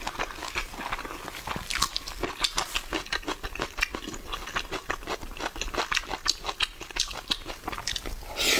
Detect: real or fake real